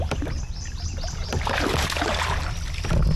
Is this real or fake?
fake